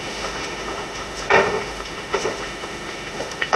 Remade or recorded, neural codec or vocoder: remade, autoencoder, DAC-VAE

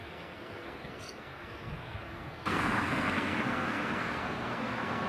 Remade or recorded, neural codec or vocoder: remade, codec, SNAC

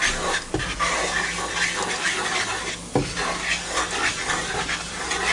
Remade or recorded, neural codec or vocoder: recorded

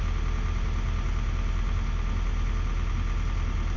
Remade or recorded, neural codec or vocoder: recorded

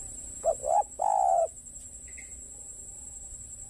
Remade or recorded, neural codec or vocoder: recorded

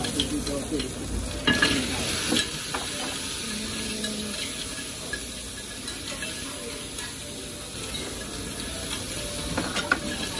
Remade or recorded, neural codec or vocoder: recorded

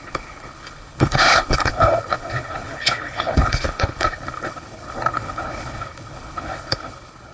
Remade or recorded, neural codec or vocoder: remade, codec, HILCodec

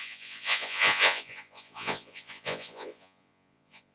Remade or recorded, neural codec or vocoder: remade, vocoder, Vocos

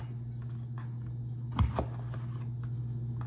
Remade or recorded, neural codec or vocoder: recorded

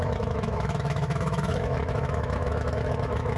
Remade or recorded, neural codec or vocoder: remade, autoencoder, DAC-VAE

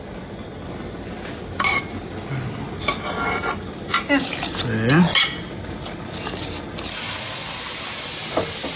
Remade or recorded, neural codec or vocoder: recorded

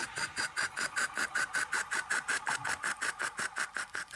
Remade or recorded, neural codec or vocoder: recorded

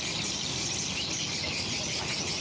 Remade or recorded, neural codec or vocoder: recorded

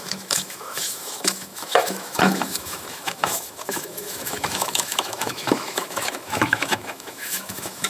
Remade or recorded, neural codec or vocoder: remade, autoencoder, DAC-VAE